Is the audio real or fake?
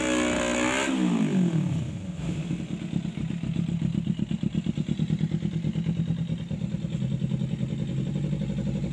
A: real